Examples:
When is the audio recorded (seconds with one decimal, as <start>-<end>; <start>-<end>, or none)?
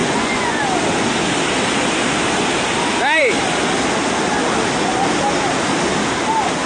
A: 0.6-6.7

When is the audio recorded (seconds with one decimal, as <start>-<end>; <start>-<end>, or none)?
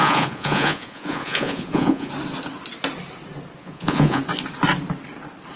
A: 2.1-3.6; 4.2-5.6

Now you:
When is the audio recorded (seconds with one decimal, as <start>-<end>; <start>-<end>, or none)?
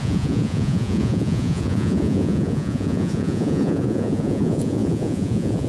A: none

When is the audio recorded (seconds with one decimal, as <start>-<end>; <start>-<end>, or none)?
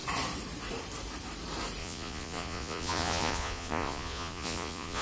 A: 0.0-1.8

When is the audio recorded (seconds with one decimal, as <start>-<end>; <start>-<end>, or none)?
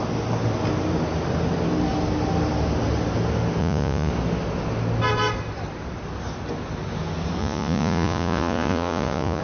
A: 0.0-3.6; 4.1-7.4